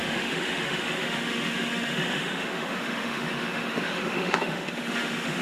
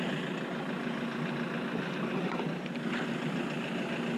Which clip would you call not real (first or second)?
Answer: first